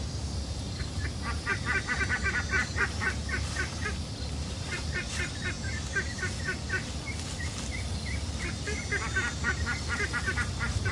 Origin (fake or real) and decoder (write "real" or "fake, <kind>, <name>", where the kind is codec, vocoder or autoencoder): real